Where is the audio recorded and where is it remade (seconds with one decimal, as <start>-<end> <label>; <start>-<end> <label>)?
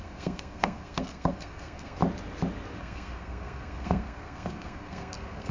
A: 0.0-2.0 remade; 2.0-2.8 recorded; 2.8-5.5 remade